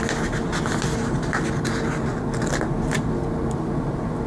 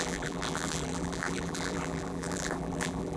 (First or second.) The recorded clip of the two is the first